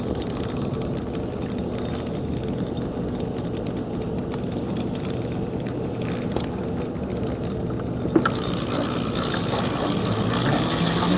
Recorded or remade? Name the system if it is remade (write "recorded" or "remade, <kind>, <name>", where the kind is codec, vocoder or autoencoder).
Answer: recorded